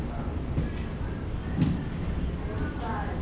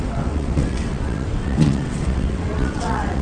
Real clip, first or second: first